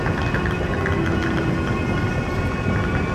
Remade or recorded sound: recorded